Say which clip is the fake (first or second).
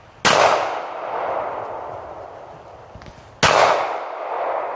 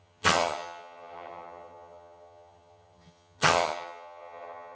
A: second